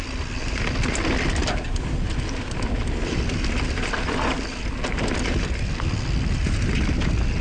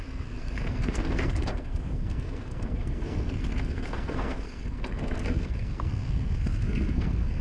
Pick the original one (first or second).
first